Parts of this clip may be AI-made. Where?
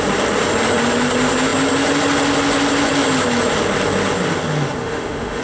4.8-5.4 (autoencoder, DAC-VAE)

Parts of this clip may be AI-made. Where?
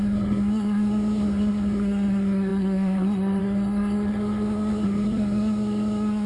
0.0-6.3 (codec, SNAC)